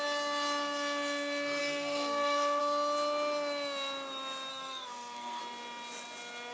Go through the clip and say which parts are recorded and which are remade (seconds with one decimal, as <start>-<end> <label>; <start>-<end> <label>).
0.0-1.6 recorded; 1.6-2.6 remade; 2.6-4.5 recorded; 4.5-5.4 remade; 5.4-6.5 recorded

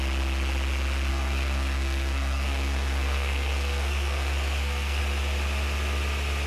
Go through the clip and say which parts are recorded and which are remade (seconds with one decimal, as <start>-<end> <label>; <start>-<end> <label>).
0.0-1.1 recorded; 1.1-5.0 remade; 5.0-6.5 recorded